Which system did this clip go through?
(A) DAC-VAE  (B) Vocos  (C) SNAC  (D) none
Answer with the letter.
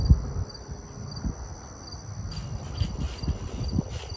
D